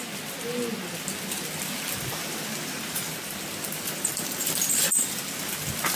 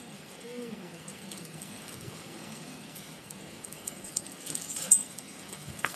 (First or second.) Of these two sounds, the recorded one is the first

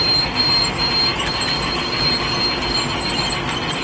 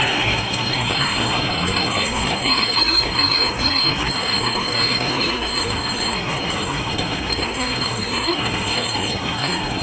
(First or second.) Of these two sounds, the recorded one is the first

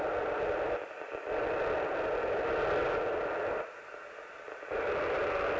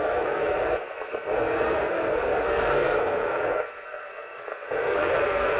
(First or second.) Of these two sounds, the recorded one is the first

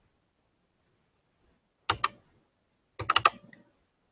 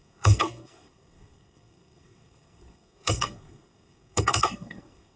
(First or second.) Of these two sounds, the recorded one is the first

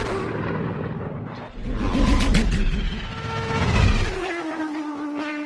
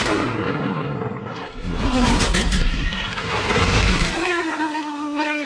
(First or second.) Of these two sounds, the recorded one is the first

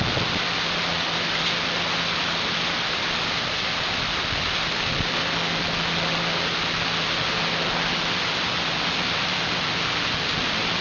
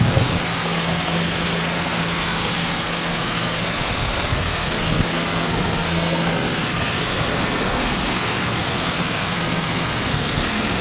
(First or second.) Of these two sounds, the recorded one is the first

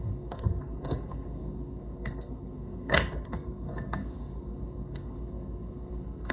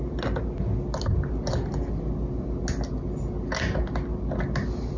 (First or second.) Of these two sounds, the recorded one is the second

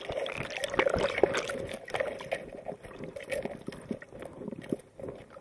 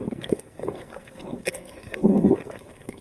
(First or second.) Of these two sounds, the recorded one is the first